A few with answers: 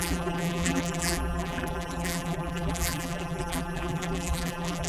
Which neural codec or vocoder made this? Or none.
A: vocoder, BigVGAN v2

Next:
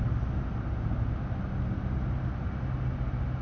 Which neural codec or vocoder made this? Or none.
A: none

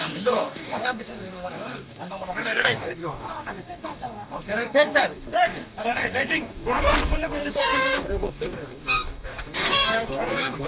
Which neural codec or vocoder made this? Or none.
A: codec, DAC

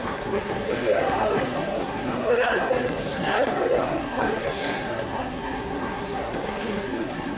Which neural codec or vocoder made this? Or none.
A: codec, SNAC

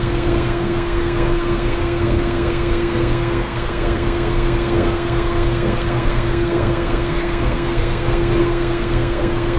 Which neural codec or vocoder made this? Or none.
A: codec, SNAC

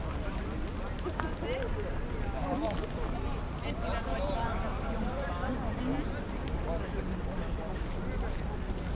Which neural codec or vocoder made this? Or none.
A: none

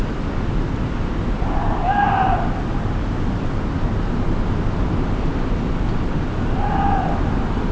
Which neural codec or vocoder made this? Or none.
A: none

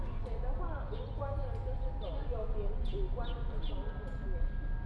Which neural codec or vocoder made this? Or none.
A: none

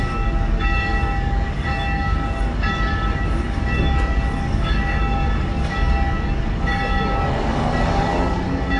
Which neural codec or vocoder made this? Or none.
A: codec, DAC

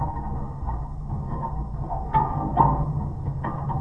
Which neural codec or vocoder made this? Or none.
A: codec, SNAC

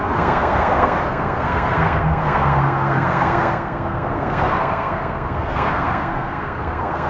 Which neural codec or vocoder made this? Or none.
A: codec, SNAC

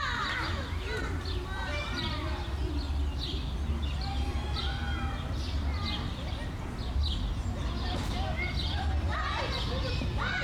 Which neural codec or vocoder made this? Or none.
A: none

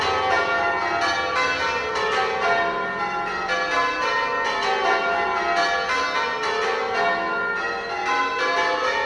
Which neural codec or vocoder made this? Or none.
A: none